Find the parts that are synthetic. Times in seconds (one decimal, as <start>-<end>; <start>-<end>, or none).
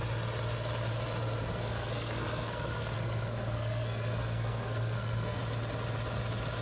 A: 1.5-5.4